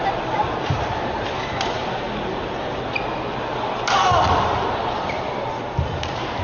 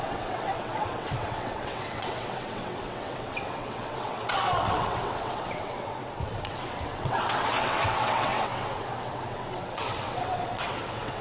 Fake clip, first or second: second